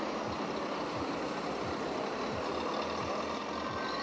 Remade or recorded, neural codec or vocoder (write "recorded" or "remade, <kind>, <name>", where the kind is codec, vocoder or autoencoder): recorded